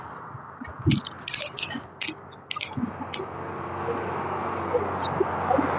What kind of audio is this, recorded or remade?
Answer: recorded